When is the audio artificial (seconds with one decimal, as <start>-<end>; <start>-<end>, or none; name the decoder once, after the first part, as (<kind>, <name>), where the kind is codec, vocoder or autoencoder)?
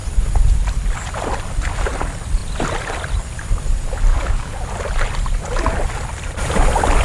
4.1-4.6 (codec, DAC)